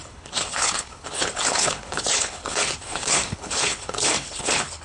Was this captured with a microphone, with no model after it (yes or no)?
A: no